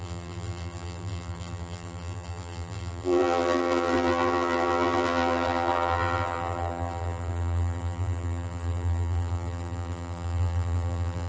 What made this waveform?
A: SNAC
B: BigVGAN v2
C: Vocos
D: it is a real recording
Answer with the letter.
B